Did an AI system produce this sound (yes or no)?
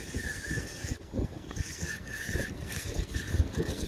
yes